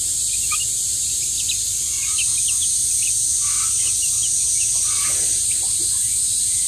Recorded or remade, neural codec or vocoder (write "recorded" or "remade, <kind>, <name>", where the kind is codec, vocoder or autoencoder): recorded